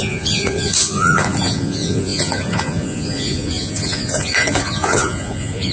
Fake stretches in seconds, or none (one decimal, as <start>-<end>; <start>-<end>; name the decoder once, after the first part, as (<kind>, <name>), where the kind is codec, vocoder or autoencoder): 0.0-5.7 (vocoder, Vocos)